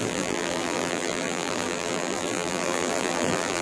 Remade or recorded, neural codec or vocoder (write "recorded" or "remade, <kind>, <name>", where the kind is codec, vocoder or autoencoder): remade, vocoder, BigVGAN v2